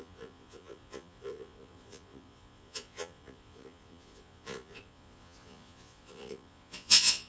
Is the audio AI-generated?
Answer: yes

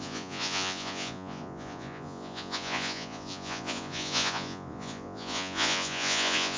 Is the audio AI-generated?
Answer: yes